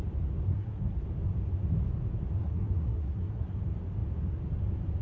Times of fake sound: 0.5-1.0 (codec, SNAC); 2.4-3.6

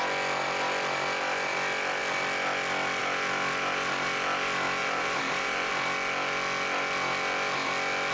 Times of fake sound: 4.8-5.7 (vocoder, BigVGAN v2)